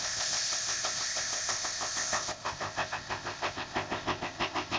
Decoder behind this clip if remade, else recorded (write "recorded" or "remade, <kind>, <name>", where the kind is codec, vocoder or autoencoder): remade, codec, ZipCodec